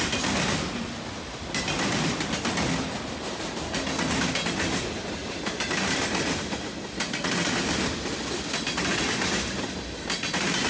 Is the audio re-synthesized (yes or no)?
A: no